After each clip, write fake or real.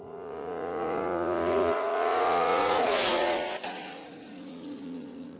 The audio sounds fake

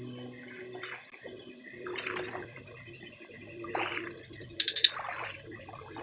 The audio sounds real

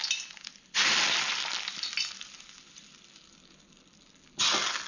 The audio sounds real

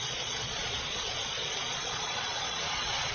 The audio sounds fake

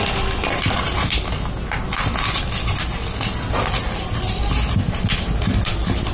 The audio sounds real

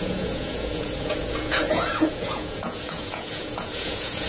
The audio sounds fake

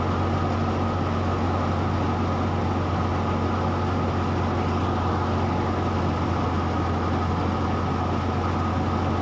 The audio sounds real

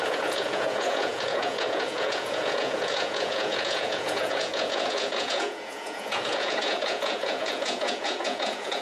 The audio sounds fake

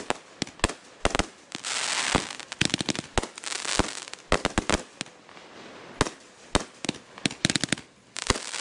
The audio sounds real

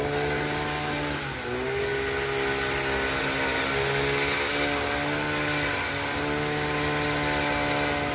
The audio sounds real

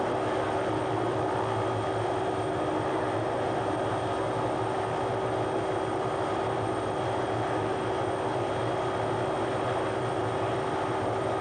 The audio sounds real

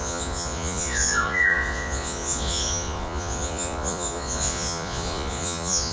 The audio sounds fake